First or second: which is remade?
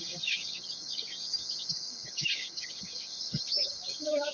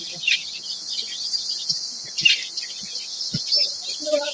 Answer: first